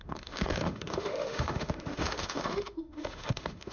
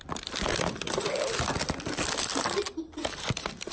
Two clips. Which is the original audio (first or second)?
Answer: second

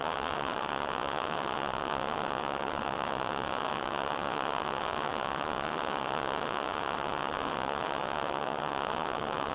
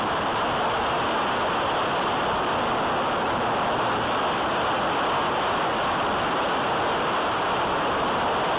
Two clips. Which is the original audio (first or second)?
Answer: second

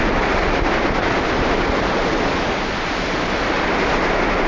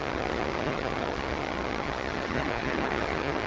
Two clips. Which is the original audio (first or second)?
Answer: first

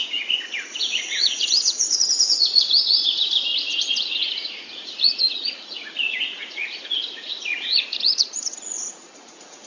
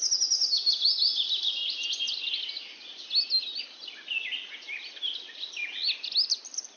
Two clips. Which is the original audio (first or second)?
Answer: second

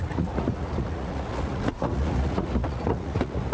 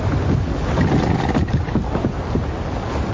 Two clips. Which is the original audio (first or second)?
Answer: second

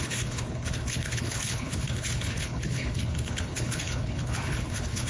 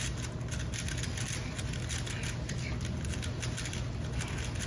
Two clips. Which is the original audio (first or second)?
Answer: second